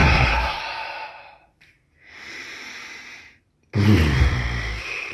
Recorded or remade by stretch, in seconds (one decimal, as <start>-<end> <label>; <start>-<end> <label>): 0.0-0.6 remade; 0.6-5.1 recorded